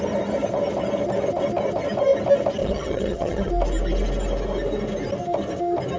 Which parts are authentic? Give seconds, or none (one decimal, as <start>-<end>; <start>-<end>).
0.0-2.6; 3.5-6.0